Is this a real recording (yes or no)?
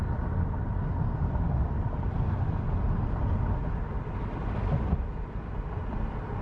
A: yes